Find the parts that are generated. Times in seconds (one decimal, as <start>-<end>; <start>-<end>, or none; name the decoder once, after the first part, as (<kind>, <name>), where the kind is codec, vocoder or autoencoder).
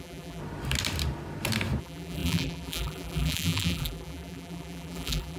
0.0-0.4 (vocoder, BigVGAN v2); 1.8-5.4